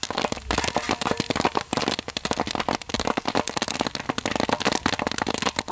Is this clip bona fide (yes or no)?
yes